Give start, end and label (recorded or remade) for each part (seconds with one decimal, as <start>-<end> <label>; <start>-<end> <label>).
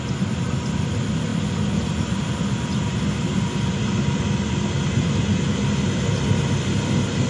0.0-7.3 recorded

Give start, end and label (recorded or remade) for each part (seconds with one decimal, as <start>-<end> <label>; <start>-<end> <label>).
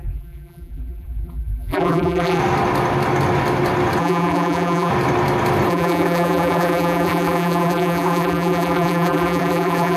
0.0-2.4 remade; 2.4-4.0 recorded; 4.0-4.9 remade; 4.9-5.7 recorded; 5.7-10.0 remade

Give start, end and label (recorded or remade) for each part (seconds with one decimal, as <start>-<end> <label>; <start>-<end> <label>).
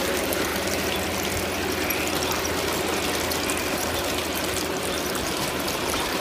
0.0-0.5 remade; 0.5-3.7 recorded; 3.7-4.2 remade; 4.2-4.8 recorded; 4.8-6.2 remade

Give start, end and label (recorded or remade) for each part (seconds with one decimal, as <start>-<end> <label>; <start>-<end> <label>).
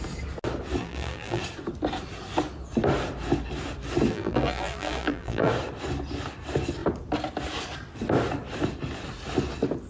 0.0-0.8 recorded; 0.8-1.4 remade; 1.4-4.1 recorded; 4.1-5.5 remade; 5.5-9.9 recorded